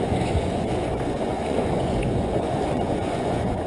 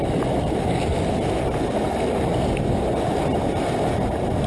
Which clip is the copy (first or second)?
first